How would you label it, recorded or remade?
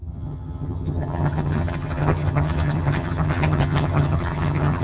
remade